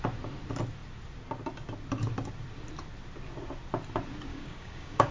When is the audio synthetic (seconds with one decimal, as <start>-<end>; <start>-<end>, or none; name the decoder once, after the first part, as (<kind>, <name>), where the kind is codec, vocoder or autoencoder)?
4.3-5.1 (codec, DAC)